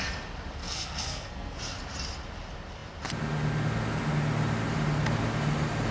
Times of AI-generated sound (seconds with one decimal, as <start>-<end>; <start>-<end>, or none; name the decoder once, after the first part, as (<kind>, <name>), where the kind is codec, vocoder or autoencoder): 0.6-1.6 (codec, SNAC)